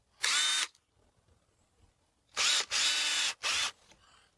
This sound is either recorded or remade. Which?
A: recorded